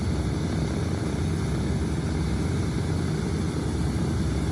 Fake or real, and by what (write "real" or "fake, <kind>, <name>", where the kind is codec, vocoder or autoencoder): real